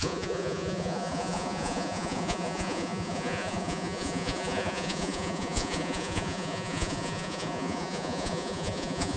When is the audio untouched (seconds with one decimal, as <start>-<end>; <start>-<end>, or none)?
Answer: none